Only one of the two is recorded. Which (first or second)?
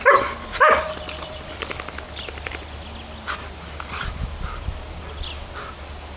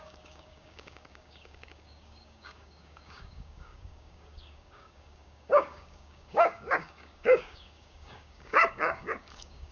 first